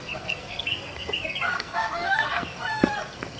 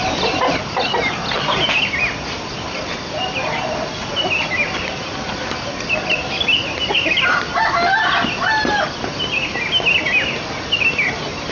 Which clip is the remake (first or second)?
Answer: first